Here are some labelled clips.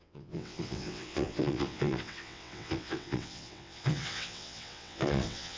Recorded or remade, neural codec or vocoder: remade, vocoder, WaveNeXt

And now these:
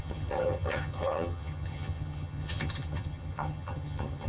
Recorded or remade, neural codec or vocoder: remade, vocoder, HiFi-GAN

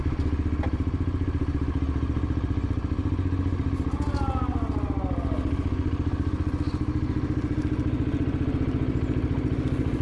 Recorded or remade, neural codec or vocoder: recorded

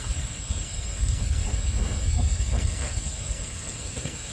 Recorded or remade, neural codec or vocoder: remade, codec, SNAC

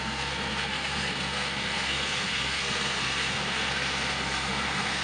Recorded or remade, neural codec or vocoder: remade, codec, SNAC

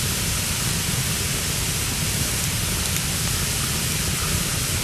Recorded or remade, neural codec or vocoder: recorded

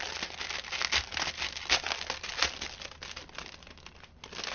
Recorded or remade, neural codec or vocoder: recorded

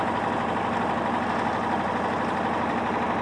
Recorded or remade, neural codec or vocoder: recorded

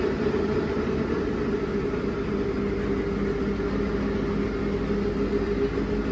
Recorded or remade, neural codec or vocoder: recorded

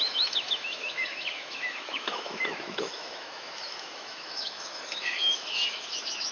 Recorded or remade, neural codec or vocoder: remade, autoencoder, DAC-VAE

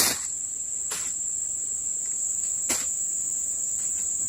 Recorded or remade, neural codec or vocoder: recorded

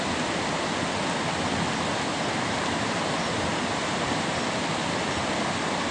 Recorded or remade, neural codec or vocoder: recorded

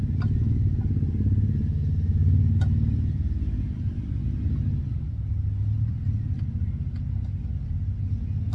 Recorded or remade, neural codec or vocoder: recorded